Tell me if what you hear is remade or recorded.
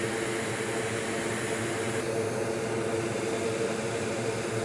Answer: recorded